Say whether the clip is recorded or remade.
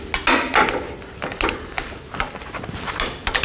recorded